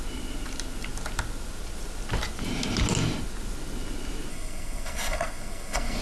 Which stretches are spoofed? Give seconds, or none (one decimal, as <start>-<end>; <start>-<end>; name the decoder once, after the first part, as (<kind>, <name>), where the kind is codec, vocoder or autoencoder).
4.3-6.0 (codec, SNAC)